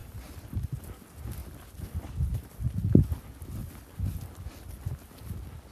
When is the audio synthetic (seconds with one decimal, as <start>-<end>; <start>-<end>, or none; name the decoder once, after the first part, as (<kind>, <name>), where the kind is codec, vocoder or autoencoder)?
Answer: 1.4-2.6 (vocoder, BigVGAN v2); 3.6-4.6